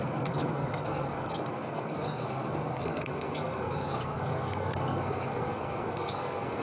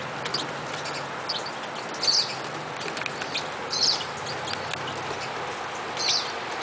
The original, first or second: second